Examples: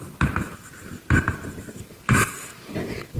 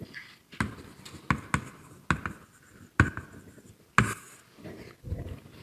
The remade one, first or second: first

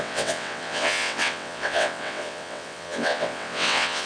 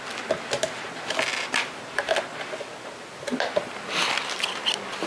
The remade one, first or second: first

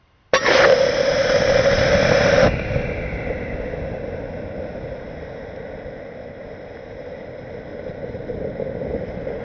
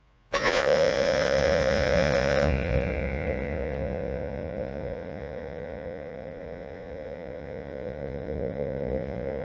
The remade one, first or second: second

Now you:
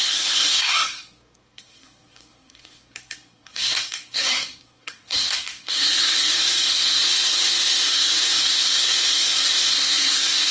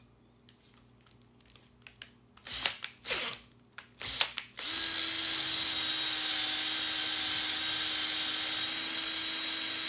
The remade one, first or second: first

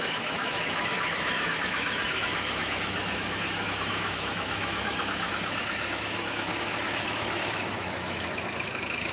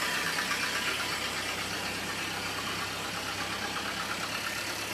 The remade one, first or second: first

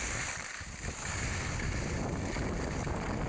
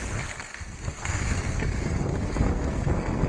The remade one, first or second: second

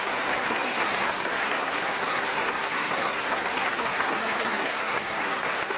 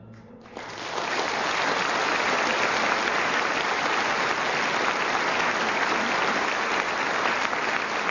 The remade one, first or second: first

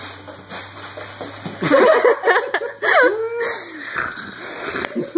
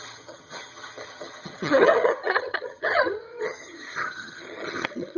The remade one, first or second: second